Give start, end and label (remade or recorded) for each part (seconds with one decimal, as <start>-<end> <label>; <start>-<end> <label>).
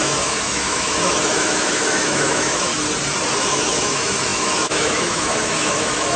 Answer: 0.0-2.7 remade; 2.7-3.4 recorded; 3.4-6.2 remade